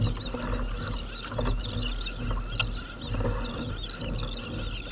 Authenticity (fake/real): real